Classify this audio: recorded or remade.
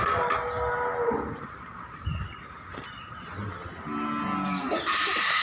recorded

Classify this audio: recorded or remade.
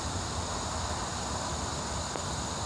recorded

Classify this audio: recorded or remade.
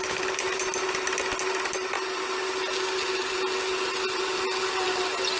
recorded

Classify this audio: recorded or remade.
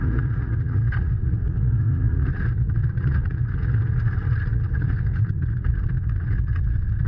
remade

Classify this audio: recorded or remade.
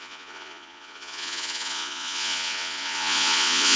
remade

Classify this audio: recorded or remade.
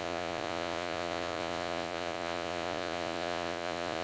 remade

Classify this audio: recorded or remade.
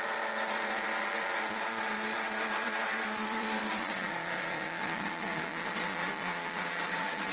remade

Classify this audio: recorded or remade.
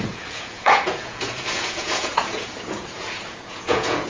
remade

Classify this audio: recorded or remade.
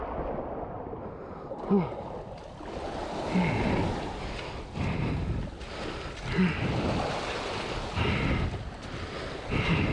recorded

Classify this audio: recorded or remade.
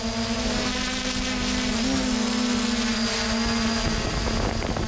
recorded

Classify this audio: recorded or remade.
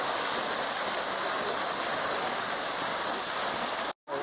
recorded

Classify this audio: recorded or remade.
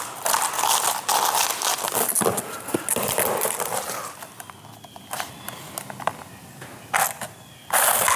recorded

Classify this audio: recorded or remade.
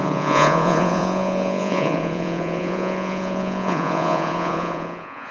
remade